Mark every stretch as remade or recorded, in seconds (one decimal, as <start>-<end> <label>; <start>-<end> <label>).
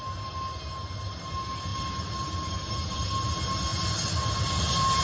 0.0-1.7 recorded; 1.7-3.1 remade; 3.1-3.7 recorded; 3.7-5.0 remade